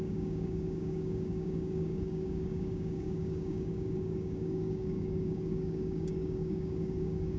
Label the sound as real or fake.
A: fake